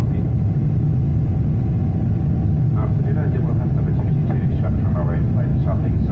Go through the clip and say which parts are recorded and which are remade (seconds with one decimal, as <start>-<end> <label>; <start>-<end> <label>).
0.0-5.5 recorded; 5.5-6.1 remade